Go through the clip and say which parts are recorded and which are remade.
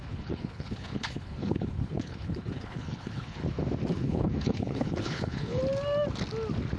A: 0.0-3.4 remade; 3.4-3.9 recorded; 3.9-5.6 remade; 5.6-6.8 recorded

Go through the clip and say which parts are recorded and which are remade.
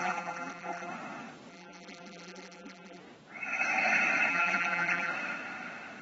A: 0.0-0.9 remade; 0.9-1.5 recorded; 1.5-3.0 remade; 3.0-4.3 recorded; 4.3-5.1 remade; 5.1-6.0 recorded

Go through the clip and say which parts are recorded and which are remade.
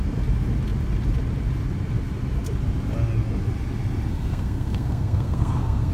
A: 0.0-4.1 recorded; 4.1-5.9 remade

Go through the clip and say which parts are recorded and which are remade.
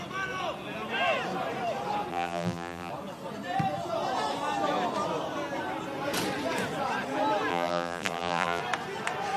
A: 0.0-2.1 recorded; 2.1-2.9 remade; 2.9-7.5 recorded; 7.5-8.6 remade; 8.6-9.4 recorded